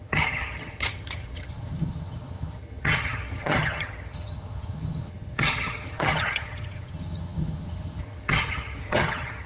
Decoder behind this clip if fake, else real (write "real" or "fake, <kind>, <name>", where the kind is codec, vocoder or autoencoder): fake, vocoder, HiFi-GAN